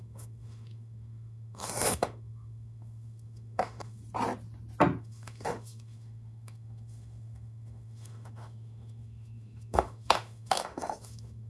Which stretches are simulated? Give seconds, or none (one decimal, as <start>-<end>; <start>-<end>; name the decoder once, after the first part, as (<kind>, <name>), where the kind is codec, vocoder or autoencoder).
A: 0.0-4.0 (autoencoder, DAC-VAE); 5.0-11.5